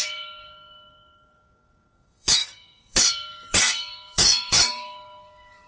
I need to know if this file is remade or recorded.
remade